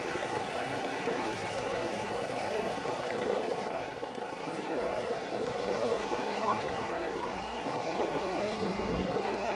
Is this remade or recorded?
remade